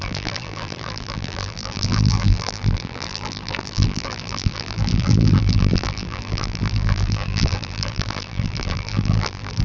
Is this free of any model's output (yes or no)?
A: no